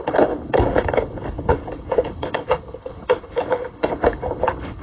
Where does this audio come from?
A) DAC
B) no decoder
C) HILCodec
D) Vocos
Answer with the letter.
C